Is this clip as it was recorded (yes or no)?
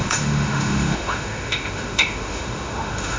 no